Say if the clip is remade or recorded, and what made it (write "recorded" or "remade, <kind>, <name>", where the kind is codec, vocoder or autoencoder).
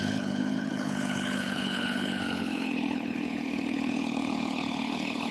remade, codec, HILCodec